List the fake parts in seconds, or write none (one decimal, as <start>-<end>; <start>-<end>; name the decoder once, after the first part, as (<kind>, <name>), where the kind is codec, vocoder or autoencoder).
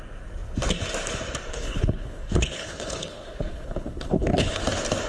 1.5-4.6 (codec, HILCodec)